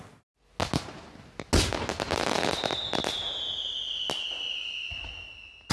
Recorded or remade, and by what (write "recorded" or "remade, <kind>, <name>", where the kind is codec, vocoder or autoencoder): recorded